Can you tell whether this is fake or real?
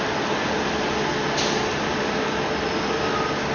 real